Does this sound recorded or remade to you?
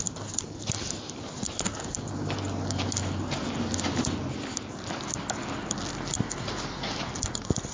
recorded